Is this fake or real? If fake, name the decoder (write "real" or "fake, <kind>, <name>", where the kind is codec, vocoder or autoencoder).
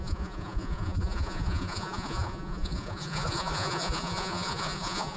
fake, vocoder, Vocos